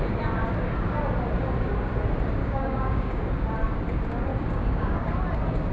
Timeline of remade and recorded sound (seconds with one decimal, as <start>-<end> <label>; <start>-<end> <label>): 0.0-2.4 recorded; 2.4-3.5 remade; 3.5-4.3 recorded; 4.3-5.1 remade; 5.1-5.7 recorded